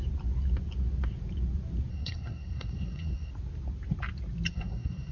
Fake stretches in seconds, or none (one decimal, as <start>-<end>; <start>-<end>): 1.9-3.3; 4.5-5.1

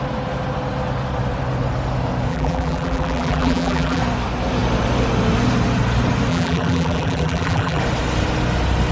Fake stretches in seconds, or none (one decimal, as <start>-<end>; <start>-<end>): 2.3-4.0; 6.3-7.8

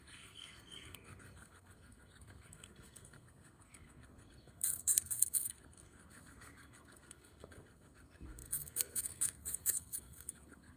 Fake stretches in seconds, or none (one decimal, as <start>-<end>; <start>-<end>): 0.0-10.8

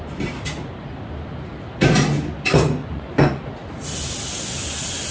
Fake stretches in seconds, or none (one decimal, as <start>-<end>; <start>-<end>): 2.8-3.4

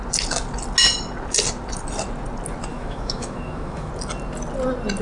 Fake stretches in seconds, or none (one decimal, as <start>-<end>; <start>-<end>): 2.7-3.9

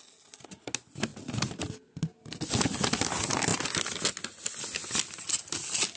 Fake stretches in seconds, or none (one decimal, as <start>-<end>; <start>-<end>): none

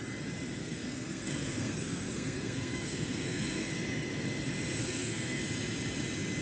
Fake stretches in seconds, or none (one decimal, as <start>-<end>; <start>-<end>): 0.6-3.7; 4.8-5.4

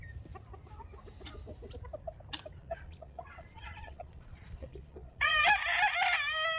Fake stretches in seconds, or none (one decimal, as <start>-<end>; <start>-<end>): 2.6-5.3